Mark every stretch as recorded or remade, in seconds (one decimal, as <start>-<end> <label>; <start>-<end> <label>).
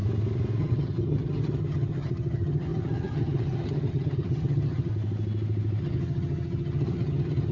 0.0-0.6 recorded; 0.6-4.9 remade; 4.9-5.8 recorded; 5.8-7.5 remade